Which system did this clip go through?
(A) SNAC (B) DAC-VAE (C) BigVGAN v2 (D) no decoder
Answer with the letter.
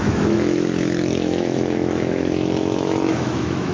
B